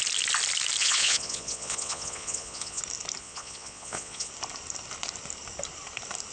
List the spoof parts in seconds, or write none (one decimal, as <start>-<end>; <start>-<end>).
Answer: 0.8-2.8; 3.2-4.3